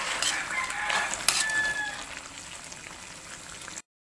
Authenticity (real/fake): real